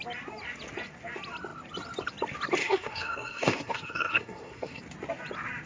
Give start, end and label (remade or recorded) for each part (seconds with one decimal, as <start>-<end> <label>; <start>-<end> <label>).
0.0-2.6 recorded; 2.6-4.8 remade; 4.8-5.7 recorded

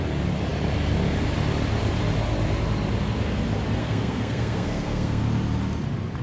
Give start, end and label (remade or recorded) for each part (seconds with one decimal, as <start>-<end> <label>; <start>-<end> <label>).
0.0-3.8 recorded; 3.8-5.2 remade; 5.2-6.2 recorded

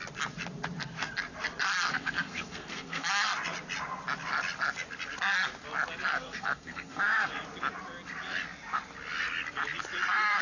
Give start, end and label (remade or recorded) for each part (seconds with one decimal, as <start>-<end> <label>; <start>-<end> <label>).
0.0-1.9 recorded; 1.9-3.1 remade; 3.1-6.1 recorded; 6.1-7.3 remade; 7.3-10.4 recorded

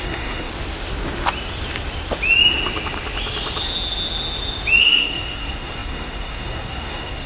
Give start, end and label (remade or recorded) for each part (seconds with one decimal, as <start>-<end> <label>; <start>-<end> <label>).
0.0-0.5 remade; 0.5-4.8 recorded; 4.8-7.3 remade

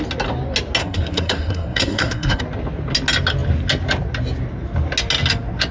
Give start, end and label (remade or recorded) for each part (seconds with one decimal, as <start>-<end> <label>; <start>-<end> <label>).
0.0-0.8 recorded; 0.8-2.4 remade; 2.4-5.7 recorded

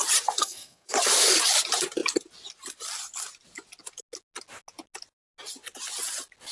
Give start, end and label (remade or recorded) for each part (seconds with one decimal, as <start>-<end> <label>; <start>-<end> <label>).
0.0-0.4 recorded; 0.4-0.9 remade; 0.9-6.5 recorded

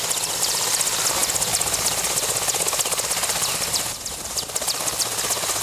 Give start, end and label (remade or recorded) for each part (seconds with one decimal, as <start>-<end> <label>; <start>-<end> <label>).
0.0-5.6 recorded

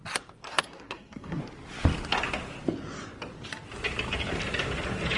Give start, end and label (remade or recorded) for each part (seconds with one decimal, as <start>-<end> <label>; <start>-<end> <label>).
0.0-0.5 recorded; 0.5-1.4 remade; 1.4-5.2 recorded